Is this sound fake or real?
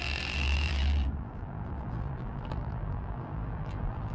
fake